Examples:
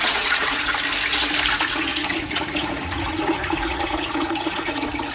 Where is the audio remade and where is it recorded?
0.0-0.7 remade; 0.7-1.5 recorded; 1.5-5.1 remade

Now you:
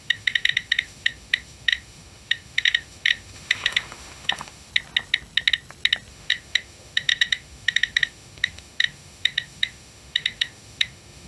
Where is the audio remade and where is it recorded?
0.0-4.7 remade; 4.7-6.1 recorded; 6.1-11.3 remade

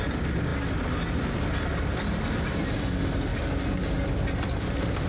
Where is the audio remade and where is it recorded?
0.0-5.1 recorded

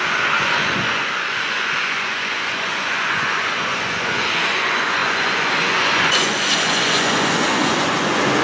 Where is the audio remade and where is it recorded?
0.0-8.4 remade

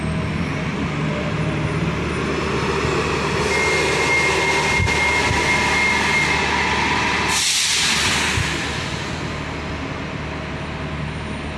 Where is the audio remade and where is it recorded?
0.0-8.7 recorded; 8.7-9.2 remade; 9.2-11.6 recorded